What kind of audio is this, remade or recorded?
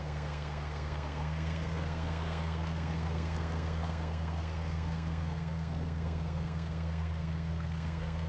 remade